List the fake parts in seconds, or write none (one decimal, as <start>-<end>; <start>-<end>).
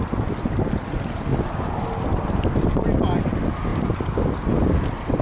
none